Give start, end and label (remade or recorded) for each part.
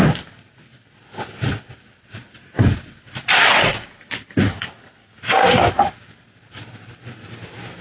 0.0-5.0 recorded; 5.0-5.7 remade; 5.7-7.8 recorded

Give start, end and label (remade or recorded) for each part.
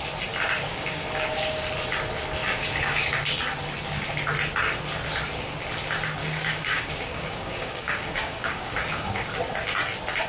0.0-0.7 recorded; 0.7-1.7 remade; 1.7-2.4 recorded; 2.4-3.1 remade; 3.1-6.2 recorded; 6.2-9.3 remade; 9.3-10.3 recorded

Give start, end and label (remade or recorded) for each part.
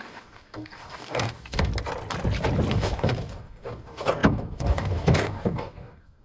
0.0-1.7 remade; 1.7-2.7 recorded; 2.7-6.2 remade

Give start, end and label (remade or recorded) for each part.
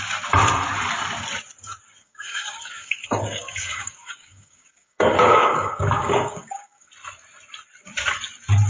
0.0-2.0 recorded; 2.0-6.9 remade; 6.9-8.7 recorded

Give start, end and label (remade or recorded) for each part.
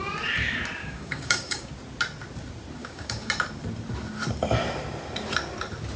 0.0-0.8 recorded; 0.8-1.7 remade; 1.7-2.8 recorded; 2.8-3.3 remade; 3.3-6.0 recorded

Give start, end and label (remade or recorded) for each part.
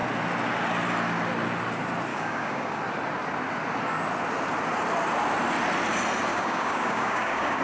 0.0-2.1 recorded; 2.1-2.8 remade; 2.8-6.3 recorded; 6.3-7.6 remade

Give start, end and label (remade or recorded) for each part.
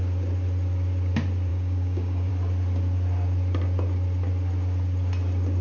0.0-1.5 recorded; 1.5-2.3 remade; 2.3-5.6 recorded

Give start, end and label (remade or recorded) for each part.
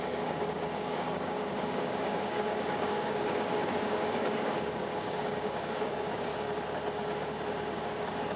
0.0-6.3 remade; 6.3-7.6 recorded; 7.6-8.4 remade